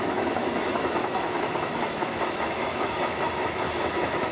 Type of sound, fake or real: fake